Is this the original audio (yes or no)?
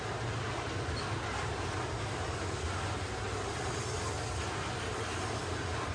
yes